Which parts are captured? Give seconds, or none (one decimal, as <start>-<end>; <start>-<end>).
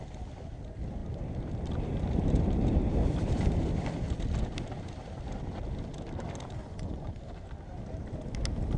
0.0-6.6; 7.2-8.8